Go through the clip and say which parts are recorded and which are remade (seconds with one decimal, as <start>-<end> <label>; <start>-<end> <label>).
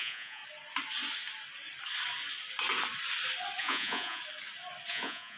0.0-0.4 remade; 0.4-3.6 recorded; 3.6-4.2 remade; 4.2-4.9 recorded; 4.9-5.4 remade